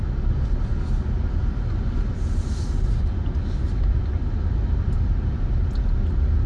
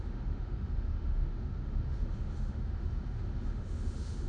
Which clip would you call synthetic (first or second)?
second